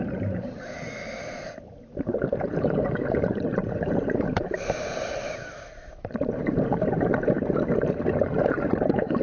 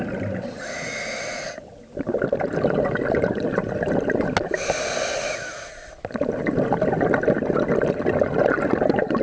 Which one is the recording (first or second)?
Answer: second